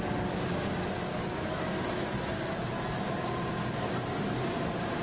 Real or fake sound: real